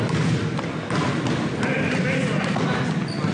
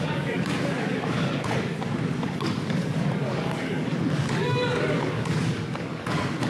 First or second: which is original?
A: first